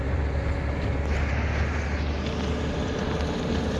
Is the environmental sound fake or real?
real